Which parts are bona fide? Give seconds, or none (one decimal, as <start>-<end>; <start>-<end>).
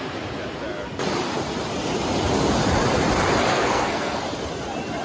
0.0-3.5; 4.2-5.0